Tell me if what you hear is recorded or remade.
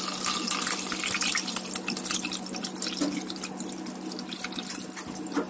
recorded